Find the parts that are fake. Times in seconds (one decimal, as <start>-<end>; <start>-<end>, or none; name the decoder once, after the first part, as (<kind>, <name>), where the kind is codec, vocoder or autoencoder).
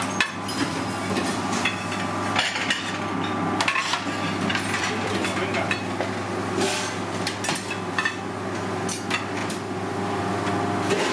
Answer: 4.5-5.1 (vocoder, BigVGAN v2)